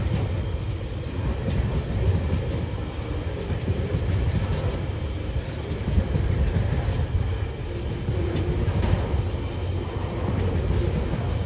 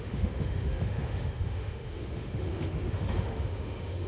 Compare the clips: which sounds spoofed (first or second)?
second